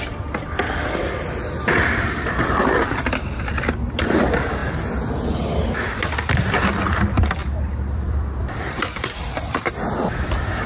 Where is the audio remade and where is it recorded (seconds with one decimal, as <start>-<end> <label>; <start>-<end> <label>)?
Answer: 0.0-4.6 remade; 4.6-6.5 recorded; 6.5-10.7 remade

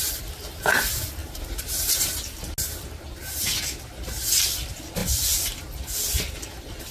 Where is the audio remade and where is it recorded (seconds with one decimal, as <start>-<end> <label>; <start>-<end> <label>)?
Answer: 0.0-1.2 recorded; 1.2-2.2 remade; 2.2-6.9 recorded

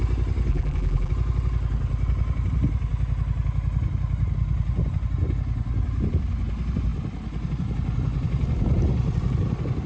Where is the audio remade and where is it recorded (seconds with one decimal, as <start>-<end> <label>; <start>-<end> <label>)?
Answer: 0.0-0.5 recorded; 0.5-1.1 remade; 1.1-9.9 recorded